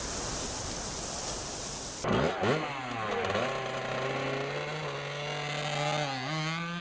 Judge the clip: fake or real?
real